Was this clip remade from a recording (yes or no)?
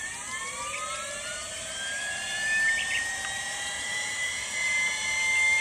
yes